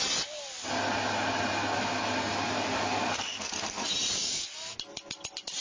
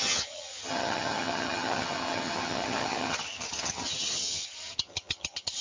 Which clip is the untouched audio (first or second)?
first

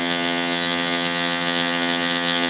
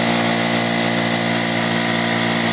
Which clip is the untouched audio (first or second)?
second